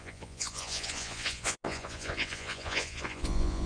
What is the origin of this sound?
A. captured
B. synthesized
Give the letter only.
B